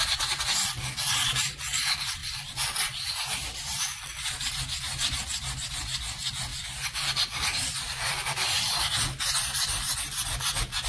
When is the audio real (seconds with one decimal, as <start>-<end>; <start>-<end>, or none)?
0.0-6.5; 8.9-10.9